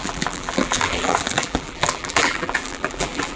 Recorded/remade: remade